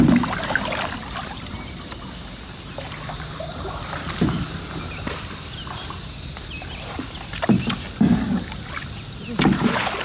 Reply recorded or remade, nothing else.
recorded